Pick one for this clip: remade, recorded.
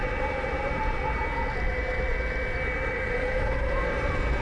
recorded